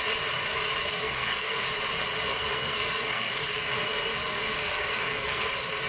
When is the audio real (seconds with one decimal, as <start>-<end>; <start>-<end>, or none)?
0.0-0.8; 1.6-2.3; 5.5-5.9